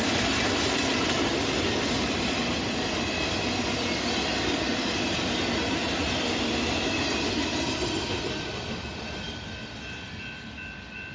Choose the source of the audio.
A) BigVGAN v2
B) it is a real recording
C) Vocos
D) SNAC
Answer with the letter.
B